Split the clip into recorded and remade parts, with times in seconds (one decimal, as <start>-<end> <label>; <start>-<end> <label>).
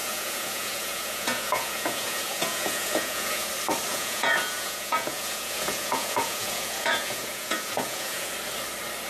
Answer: 0.0-3.5 remade; 3.5-3.9 recorded; 3.9-8.3 remade; 8.3-9.1 recorded